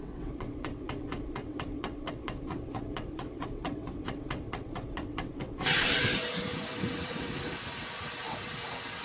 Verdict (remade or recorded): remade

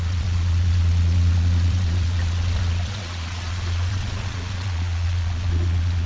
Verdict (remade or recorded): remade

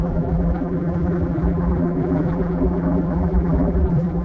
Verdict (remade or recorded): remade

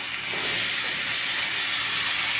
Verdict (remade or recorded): recorded